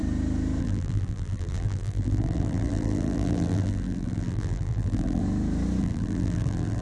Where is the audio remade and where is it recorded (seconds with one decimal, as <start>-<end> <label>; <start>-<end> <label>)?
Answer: 0.0-0.6 recorded; 0.6-5.2 remade; 5.2-5.8 recorded; 5.8-6.8 remade